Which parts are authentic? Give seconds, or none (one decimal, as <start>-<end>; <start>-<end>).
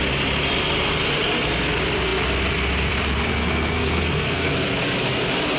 0.0-3.3; 4.5-5.6